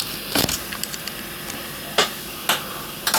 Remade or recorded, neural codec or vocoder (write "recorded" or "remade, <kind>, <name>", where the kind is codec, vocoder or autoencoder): recorded